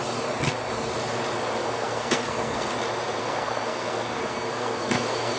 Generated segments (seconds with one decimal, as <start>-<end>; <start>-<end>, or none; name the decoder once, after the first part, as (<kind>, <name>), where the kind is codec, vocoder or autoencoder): 1.6-2.7 (codec, SNAC); 3.2-5.4